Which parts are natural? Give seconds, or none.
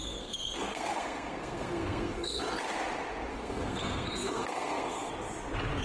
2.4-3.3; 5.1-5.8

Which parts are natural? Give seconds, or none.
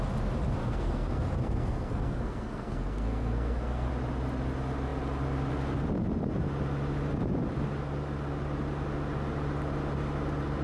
0.0-0.6; 3.9-10.6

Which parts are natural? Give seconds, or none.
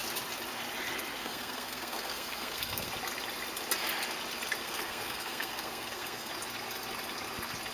0.0-1.2; 2.9-4.6; 6.3-7.7